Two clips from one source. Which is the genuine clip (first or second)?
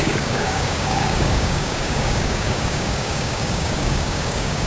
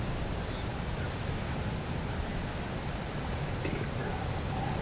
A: second